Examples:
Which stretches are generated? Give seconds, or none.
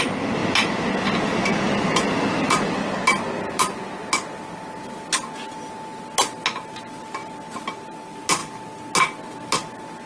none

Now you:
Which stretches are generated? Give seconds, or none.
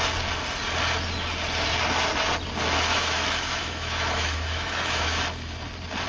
2.9-5.2 (autoencoder, DAC-VAE)